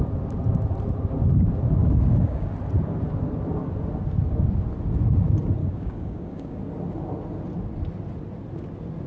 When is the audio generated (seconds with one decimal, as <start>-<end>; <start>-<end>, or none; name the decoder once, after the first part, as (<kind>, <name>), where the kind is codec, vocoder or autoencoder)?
1.8-2.5 (codec, DAC); 5.6-6.6